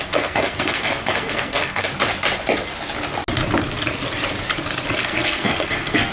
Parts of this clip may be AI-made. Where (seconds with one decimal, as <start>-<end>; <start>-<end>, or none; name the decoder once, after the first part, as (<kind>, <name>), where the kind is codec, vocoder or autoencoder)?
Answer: 0.0-1.9 (codec, SNAC); 5.0-6.1